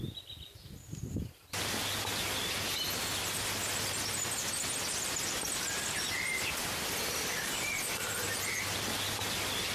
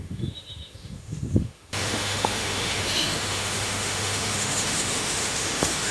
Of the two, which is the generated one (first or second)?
second